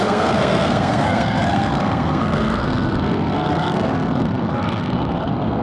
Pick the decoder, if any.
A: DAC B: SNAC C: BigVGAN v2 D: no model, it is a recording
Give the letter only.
B